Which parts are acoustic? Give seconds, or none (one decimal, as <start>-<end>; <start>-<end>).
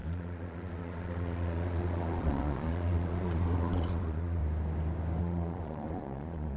4.4-5.2